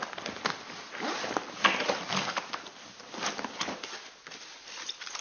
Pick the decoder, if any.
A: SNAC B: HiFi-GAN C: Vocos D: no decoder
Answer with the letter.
D